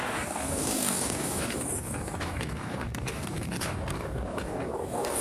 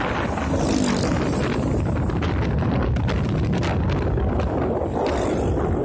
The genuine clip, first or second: second